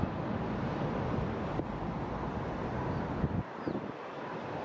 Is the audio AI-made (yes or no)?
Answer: no